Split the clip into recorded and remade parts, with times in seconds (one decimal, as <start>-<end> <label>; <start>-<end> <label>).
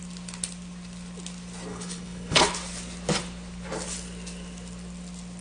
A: 0.0-1.7 recorded; 1.7-2.4 remade; 2.4-5.4 recorded